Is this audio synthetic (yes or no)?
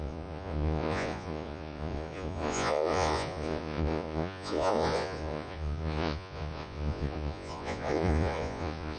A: yes